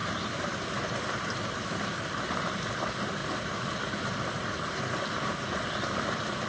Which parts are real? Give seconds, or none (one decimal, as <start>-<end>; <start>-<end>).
0.0-3.2; 3.8-6.5